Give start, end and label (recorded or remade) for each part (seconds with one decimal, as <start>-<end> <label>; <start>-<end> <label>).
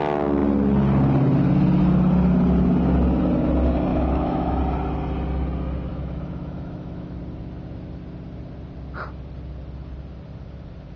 0.0-3.9 recorded; 3.9-4.6 remade; 4.6-5.9 recorded; 5.9-7.2 remade; 7.2-11.0 recorded